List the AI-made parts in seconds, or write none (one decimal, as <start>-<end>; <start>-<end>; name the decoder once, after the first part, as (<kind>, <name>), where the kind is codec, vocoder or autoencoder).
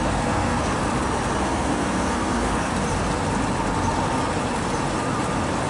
0.0-0.7 (codec, SNAC); 1.4-2.7